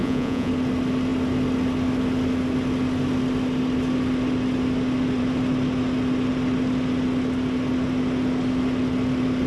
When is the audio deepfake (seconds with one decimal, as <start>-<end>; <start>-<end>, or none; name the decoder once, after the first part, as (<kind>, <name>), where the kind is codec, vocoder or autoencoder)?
0.0-0.5 (vocoder, Vocos)